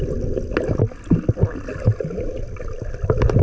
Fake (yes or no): no